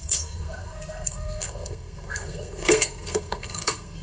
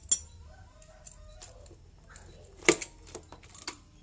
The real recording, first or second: second